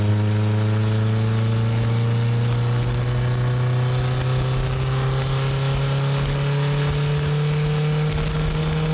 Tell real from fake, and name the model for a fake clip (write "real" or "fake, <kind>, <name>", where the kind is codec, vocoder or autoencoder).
real